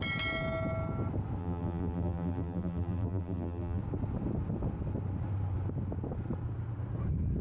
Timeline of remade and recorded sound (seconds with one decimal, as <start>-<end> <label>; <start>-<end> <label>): 0.0-1.4 recorded; 1.4-3.8 remade; 3.8-7.4 recorded

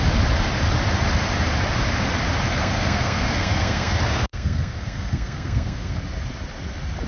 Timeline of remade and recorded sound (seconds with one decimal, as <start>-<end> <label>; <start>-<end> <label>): 0.0-2.5 recorded; 2.5-6.0 remade; 6.0-7.1 recorded

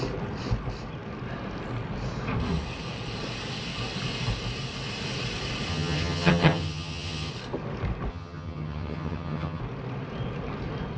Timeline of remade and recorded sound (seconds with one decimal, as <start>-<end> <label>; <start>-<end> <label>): 0.0-5.7 recorded; 5.7-7.3 remade; 7.3-8.1 recorded; 8.1-9.6 remade; 9.6-11.0 recorded

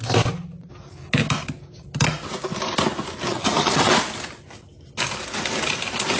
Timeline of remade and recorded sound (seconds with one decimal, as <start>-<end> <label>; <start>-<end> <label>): 0.0-3.3 recorded; 3.3-3.9 remade; 3.9-6.2 recorded

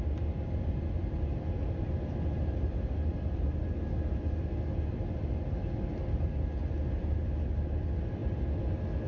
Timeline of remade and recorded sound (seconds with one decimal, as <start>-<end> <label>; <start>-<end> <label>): 0.0-9.1 recorded

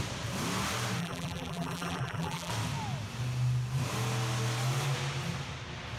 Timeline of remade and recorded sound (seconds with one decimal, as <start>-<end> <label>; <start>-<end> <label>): 0.0-1.0 recorded; 1.0-2.5 remade; 2.5-6.0 recorded

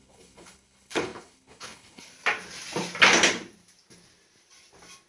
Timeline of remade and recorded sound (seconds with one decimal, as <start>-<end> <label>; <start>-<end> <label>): 0.0-2.1 remade; 2.1-5.1 recorded